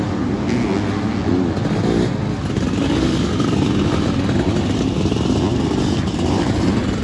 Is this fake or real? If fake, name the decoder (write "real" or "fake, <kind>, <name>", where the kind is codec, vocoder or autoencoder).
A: real